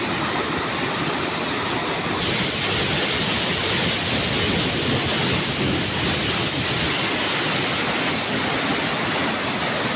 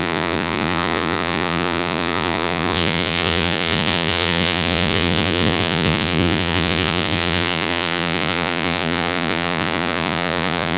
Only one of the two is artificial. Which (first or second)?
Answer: second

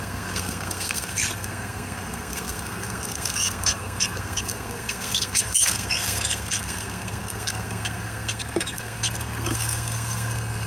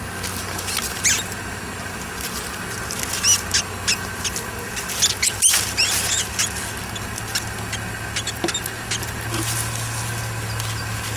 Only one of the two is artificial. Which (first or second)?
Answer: first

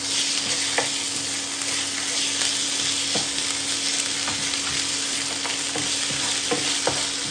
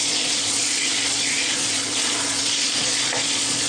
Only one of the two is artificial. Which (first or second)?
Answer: second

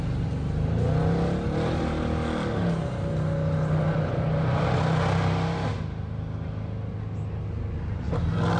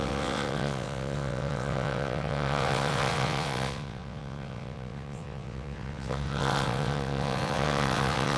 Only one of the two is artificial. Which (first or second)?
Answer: second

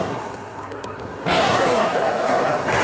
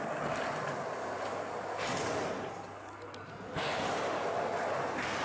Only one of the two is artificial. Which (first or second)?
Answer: first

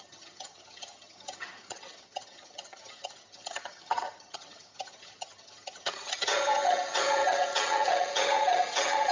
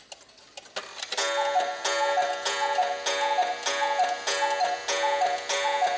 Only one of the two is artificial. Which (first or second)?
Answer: first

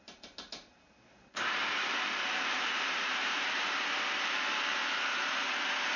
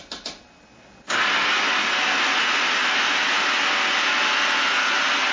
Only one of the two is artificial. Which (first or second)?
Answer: first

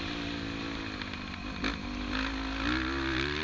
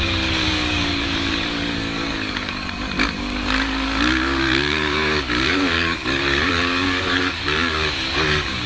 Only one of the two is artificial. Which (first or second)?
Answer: second